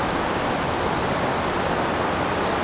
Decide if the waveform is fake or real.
real